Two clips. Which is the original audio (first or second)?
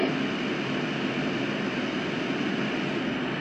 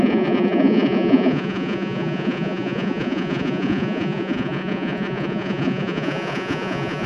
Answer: first